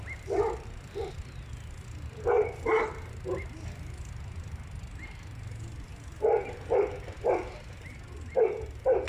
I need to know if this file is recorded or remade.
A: recorded